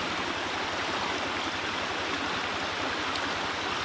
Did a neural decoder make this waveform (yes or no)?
no